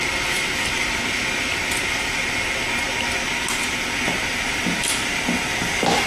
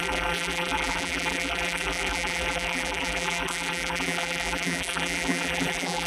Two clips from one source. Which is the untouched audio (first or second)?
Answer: first